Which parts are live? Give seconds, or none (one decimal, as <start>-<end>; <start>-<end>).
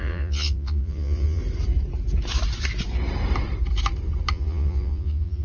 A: 1.4-4.3